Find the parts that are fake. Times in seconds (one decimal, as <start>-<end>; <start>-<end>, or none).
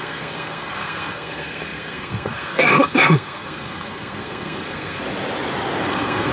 0.0-5.0; 5.8-6.3